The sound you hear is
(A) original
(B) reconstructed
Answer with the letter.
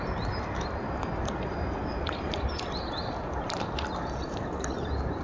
B